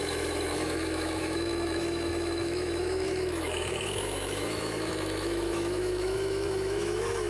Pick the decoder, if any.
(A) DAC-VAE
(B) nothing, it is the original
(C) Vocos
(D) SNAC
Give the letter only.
A